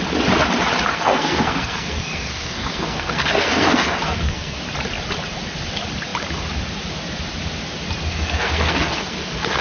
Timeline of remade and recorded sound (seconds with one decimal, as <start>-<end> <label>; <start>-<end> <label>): 0.0-0.9 recorded; 0.9-4.6 remade; 4.6-8.1 recorded; 8.1-9.6 remade